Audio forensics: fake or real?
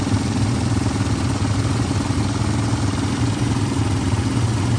real